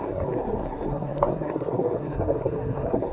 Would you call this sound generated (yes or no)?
yes